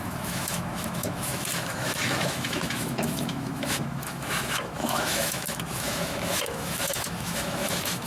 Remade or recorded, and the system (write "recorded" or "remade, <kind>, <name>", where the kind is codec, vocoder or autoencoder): remade, autoencoder, DAC-VAE